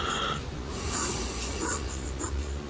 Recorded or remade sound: remade